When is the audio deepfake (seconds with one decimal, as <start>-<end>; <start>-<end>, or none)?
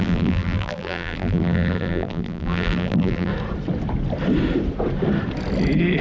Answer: 0.0-3.3